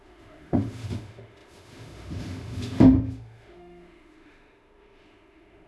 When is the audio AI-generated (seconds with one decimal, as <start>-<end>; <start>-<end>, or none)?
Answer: 0.0-5.7